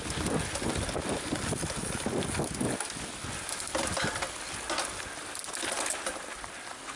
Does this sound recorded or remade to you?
recorded